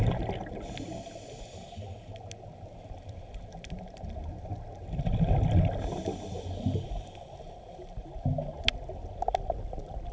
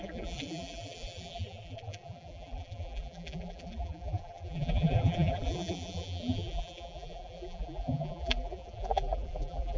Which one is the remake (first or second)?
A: second